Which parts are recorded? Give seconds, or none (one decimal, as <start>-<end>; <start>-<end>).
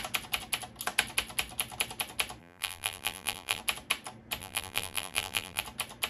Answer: 0.0-2.4; 3.6-4.4; 5.6-6.1